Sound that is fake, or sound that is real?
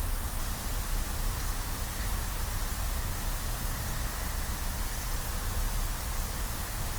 real